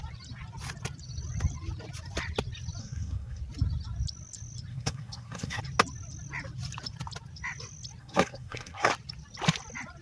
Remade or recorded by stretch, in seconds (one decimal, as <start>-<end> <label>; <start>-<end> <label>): 0.0-2.8 recorded; 2.8-3.4 remade; 3.4-4.7 recorded; 4.7-5.6 remade; 5.6-8.0 recorded; 8.0-8.9 remade; 8.9-10.0 recorded